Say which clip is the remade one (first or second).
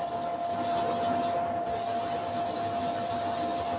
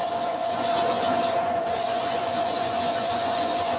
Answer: second